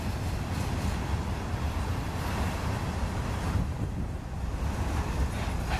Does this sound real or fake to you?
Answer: real